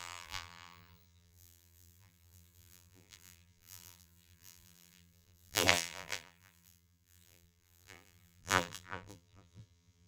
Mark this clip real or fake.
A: fake